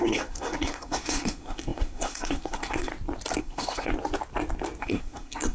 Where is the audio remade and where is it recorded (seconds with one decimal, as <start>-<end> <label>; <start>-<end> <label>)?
0.0-2.9 remade; 2.9-3.4 recorded; 3.4-3.9 remade; 3.9-4.8 recorded; 4.8-5.5 remade